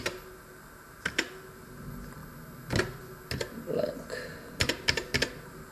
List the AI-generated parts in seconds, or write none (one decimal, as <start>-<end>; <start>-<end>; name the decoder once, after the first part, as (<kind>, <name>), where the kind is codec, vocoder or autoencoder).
none